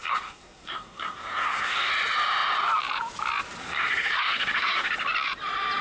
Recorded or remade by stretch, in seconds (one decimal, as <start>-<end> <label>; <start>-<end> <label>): 0.0-1.9 remade; 1.9-3.6 recorded; 3.6-4.9 remade; 4.9-5.8 recorded

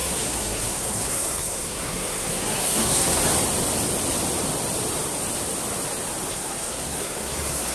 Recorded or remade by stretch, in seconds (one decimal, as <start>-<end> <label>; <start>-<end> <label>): 0.0-3.2 remade; 3.2-6.3 recorded; 6.3-7.7 remade

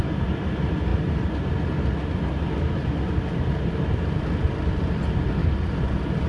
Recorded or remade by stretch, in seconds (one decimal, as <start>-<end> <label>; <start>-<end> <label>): 0.0-6.3 recorded